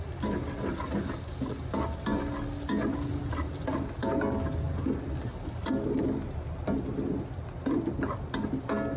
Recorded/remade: recorded